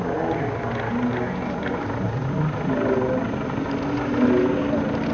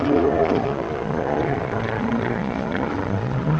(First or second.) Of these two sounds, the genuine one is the first